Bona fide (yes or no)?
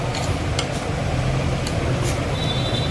yes